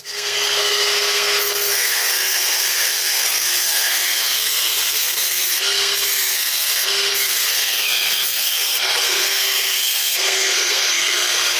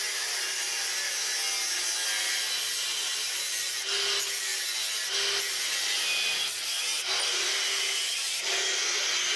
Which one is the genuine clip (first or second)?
second